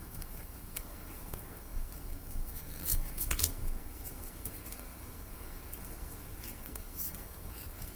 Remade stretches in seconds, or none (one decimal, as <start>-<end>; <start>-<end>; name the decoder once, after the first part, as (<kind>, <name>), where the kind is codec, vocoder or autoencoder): 0.0-8.0 (codec, SNAC)